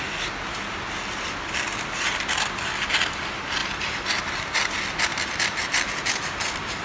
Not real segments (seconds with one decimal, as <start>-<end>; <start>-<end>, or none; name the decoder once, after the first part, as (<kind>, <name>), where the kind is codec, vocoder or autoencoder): 1.7-2.3 (vocoder, BigVGAN v2); 3.6-4.2; 5.6-6.8